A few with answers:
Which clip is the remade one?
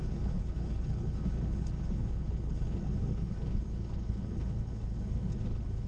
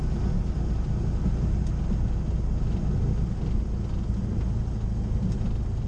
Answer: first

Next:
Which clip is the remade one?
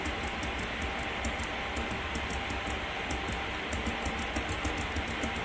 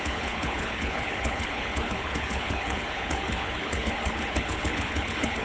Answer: second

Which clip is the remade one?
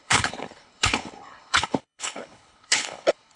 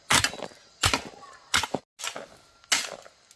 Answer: first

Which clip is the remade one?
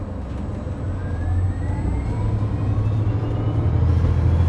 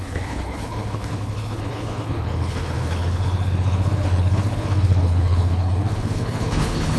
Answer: second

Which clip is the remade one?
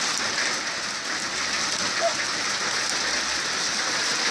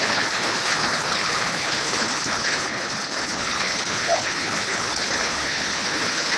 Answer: second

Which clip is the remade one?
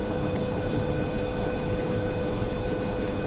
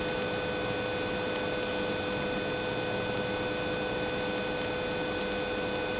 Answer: first